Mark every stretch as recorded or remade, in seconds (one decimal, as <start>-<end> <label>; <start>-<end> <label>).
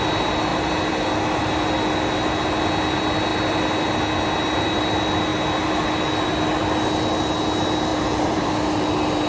0.0-7.9 recorded; 7.9-8.5 remade; 8.5-9.3 recorded